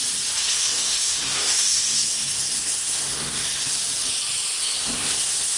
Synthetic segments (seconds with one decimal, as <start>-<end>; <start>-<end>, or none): 0.4-3.8; 4.6-5.6